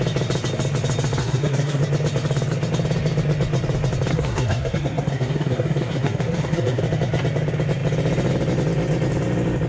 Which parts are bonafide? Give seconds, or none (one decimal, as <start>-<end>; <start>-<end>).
0.0-1.2; 1.8-4.1; 6.8-9.7